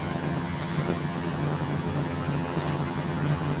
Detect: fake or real fake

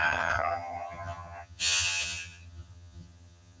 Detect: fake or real fake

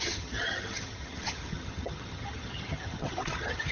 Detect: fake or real fake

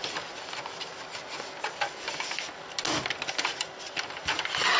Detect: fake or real real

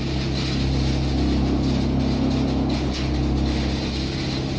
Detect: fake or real real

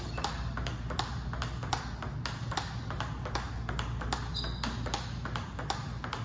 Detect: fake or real real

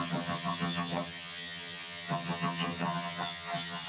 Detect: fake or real fake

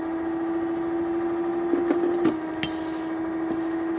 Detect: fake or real real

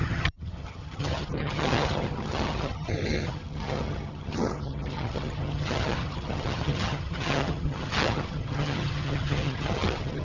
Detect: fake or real fake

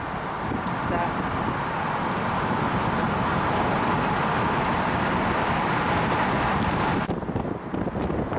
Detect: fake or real real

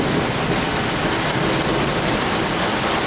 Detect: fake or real real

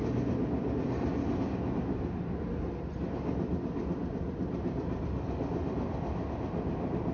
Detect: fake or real real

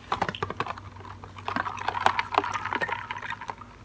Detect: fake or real real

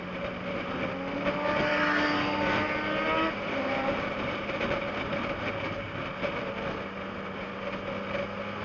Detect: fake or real real